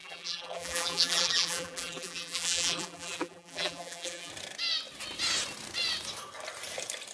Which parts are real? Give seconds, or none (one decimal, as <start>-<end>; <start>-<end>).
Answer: 4.3-7.1